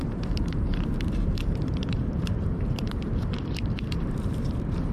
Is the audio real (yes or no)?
no